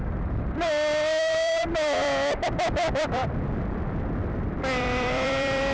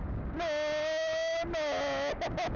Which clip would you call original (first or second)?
second